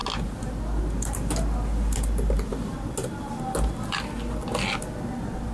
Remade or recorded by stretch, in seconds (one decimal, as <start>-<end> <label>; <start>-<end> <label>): 0.0-5.5 recorded